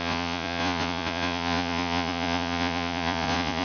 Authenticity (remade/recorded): remade